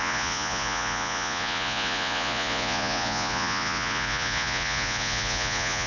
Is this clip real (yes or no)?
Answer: no